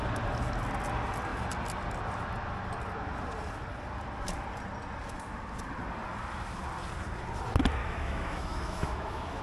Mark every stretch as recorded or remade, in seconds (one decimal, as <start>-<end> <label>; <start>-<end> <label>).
0.0-7.8 recorded; 7.8-9.4 remade